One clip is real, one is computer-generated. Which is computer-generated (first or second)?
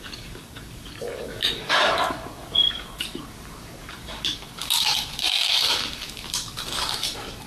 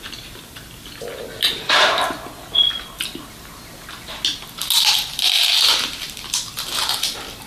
first